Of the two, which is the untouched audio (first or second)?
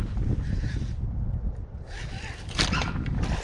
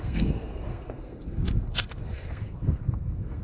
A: first